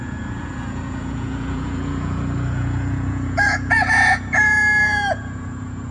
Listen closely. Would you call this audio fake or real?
fake